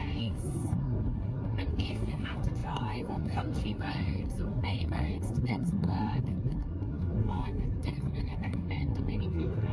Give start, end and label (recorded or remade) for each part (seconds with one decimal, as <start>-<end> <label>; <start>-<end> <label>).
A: 0.0-9.7 remade